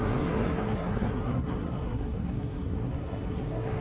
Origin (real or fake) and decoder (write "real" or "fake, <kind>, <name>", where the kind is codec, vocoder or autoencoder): fake, codec, SNAC